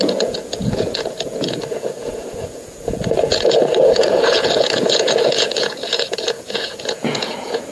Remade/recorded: remade